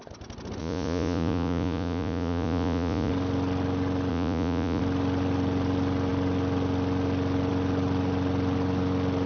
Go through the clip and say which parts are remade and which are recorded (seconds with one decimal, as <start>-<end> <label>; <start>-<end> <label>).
0.0-0.6 recorded; 0.6-3.1 remade; 3.1-4.1 recorded; 4.1-4.8 remade; 4.8-9.3 recorded